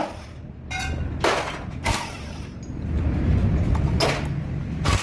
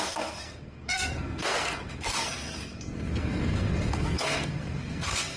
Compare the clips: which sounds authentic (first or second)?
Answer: first